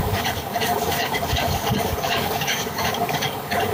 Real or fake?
fake